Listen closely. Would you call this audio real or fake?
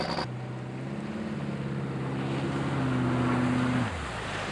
real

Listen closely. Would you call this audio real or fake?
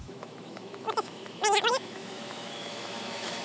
fake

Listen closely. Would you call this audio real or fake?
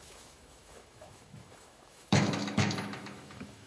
fake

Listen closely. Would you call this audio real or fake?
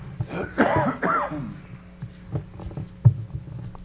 real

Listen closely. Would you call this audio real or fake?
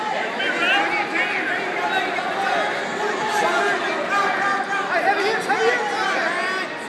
real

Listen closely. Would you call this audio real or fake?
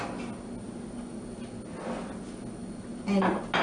real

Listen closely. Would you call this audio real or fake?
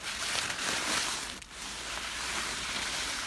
real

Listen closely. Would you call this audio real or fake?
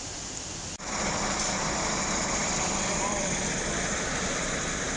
real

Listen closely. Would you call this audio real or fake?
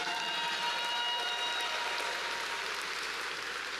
real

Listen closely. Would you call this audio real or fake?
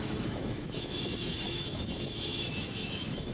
fake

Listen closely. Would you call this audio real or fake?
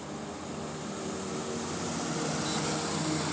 real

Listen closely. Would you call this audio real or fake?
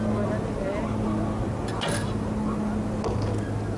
real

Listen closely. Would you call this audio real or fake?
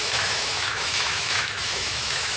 fake